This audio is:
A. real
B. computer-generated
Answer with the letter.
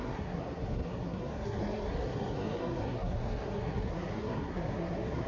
B